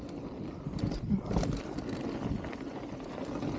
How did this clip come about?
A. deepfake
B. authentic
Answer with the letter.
B